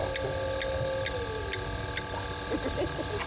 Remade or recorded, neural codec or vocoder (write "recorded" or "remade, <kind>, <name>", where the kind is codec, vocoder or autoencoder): recorded